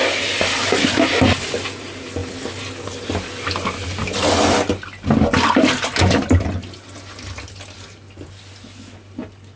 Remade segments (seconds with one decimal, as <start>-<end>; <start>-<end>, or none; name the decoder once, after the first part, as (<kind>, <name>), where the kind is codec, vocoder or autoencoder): none